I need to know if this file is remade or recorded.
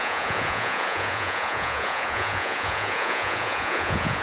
remade